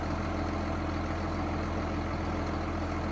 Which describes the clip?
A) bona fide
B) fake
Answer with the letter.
A